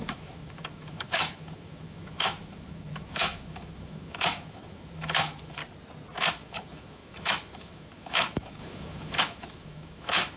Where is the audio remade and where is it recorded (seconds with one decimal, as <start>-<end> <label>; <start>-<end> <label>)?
0.0-5.6 remade; 5.6-6.3 recorded; 6.3-10.4 remade